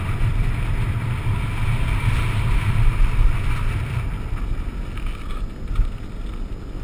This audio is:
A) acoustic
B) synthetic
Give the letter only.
A